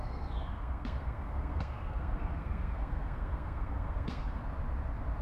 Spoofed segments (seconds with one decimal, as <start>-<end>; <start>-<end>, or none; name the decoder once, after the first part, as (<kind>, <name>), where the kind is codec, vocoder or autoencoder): 0.0-4.4 (codec, SNAC)